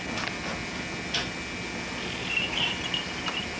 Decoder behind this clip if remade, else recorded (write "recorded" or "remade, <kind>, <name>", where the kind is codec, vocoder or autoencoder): recorded